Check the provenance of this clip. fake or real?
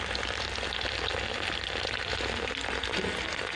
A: real